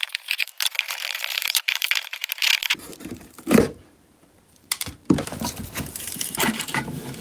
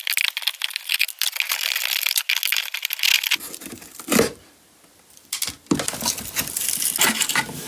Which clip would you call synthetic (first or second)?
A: first